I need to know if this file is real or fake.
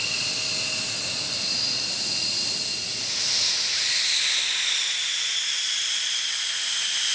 real